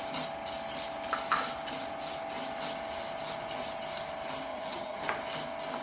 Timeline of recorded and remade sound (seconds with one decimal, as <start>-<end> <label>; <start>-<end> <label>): 0.0-4.5 recorded; 4.5-5.0 remade; 5.0-5.8 recorded